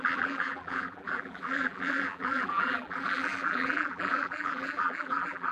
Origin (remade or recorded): remade